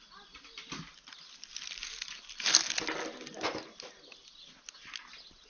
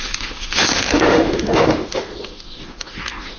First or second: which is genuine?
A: first